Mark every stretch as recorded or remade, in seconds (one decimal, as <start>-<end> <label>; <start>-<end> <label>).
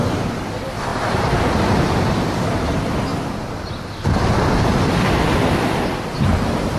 0.0-0.9 recorded; 0.9-1.4 remade; 1.4-6.8 recorded